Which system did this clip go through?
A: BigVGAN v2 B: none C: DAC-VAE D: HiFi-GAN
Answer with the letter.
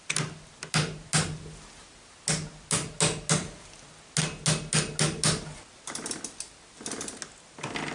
B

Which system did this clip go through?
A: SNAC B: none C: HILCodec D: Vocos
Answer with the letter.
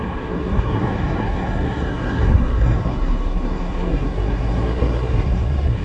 A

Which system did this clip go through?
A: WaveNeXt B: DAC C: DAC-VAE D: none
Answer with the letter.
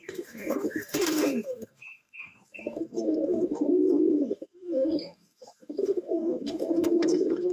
B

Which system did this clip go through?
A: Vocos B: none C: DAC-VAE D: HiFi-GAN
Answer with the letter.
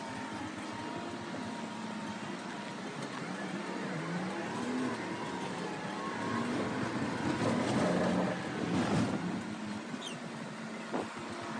B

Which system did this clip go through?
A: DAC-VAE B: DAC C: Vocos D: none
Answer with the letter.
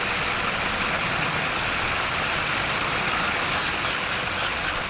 D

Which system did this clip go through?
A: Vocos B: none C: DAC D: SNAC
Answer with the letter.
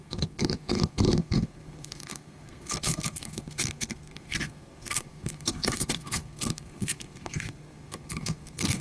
D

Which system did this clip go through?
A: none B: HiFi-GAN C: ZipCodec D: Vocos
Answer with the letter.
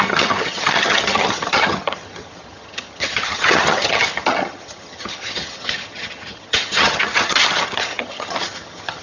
B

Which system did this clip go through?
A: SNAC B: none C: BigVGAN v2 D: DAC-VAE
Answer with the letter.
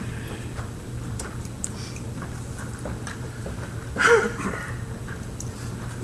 C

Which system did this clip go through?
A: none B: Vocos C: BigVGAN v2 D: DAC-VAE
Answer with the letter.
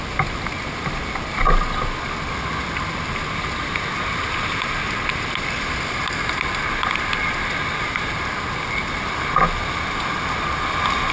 A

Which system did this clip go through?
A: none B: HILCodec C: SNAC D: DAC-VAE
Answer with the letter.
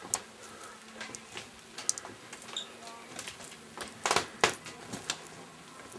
A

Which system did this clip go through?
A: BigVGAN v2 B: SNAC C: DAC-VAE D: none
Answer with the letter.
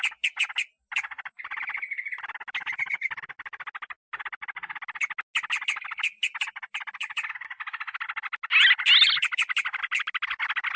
D